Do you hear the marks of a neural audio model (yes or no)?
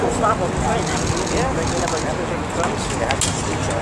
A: no